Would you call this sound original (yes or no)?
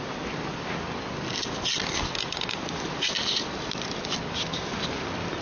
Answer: yes